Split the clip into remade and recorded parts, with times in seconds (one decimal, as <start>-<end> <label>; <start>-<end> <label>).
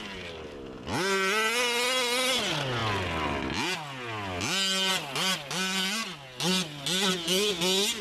0.0-8.0 recorded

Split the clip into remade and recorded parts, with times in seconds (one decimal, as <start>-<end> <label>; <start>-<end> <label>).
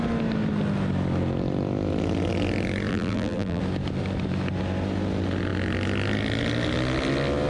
0.0-2.9 recorded; 2.9-3.6 remade; 3.6-7.5 recorded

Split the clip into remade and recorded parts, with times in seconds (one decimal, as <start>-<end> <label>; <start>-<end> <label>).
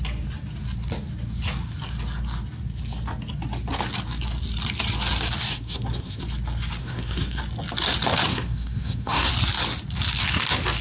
0.0-5.5 recorded; 5.5-6.2 remade; 6.2-6.8 recorded; 6.8-7.4 remade; 7.4-8.3 recorded; 8.3-9.3 remade; 9.3-10.8 recorded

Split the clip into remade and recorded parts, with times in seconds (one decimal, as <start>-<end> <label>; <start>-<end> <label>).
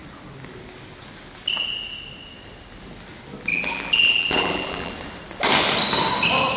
0.0-3.5 recorded; 3.5-4.9 remade; 4.9-6.6 recorded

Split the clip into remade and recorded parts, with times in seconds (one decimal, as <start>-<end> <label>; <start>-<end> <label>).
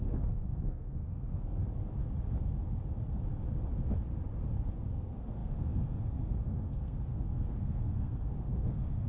0.0-1.6 remade; 1.6-4.9 recorded; 4.9-9.1 remade